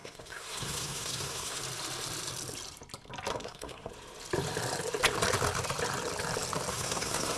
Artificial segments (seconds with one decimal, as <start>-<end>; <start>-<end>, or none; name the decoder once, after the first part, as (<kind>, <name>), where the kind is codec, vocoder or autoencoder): 0.0-1.6 (codec, SNAC); 3.3-3.9; 6.7-7.4